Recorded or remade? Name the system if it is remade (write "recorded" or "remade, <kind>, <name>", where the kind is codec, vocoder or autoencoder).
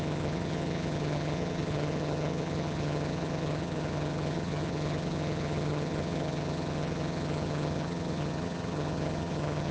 remade, vocoder, HiFi-GAN